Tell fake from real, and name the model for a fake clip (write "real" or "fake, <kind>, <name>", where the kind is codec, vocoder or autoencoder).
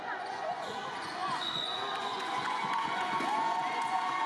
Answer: fake, vocoder, Vocos